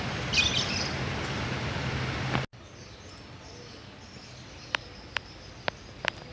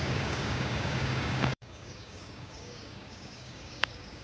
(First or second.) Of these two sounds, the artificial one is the second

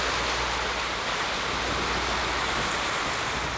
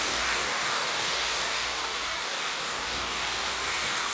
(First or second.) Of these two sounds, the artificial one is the second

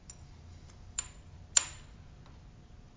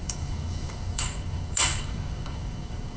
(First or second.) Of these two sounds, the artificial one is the second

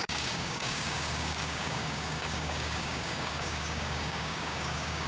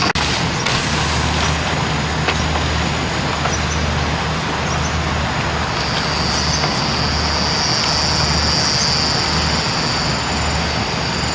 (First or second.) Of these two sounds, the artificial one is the first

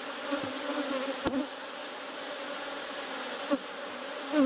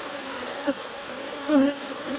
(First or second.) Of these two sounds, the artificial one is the second